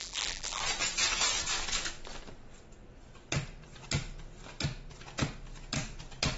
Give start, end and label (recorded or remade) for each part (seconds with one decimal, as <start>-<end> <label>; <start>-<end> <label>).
0.0-0.6 remade; 0.6-6.4 recorded